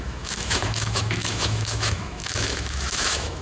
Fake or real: fake